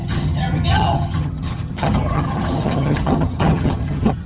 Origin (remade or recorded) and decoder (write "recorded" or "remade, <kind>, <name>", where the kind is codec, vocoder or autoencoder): remade, vocoder, HiFi-GAN